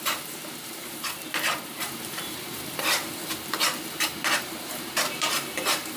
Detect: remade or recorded remade